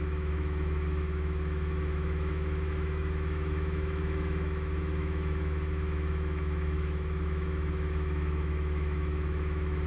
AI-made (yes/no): yes